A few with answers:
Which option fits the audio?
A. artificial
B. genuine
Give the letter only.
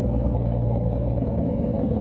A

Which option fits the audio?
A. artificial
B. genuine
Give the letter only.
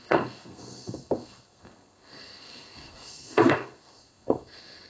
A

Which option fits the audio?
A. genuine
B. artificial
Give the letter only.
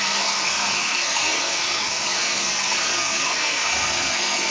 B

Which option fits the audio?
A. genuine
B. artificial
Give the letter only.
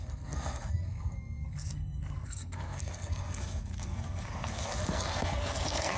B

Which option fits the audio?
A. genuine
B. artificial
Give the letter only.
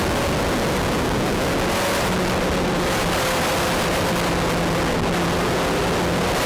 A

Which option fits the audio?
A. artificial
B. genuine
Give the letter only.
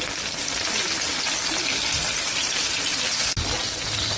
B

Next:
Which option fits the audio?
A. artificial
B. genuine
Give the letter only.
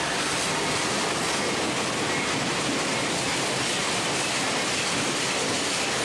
B